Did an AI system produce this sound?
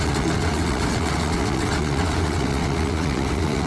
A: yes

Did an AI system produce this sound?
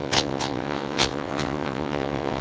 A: yes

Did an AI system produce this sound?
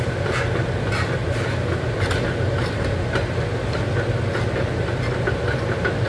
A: no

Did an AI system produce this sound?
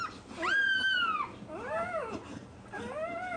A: no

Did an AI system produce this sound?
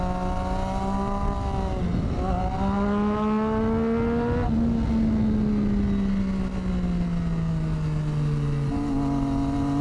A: no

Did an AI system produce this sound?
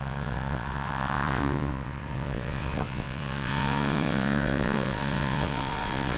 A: yes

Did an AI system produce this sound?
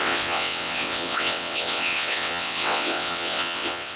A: yes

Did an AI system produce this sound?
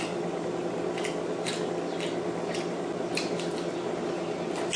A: no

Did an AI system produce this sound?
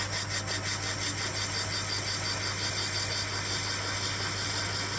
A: no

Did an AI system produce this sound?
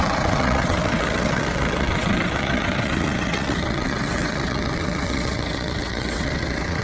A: yes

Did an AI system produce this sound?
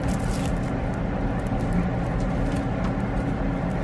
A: no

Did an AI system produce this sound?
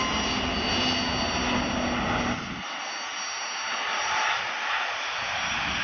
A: no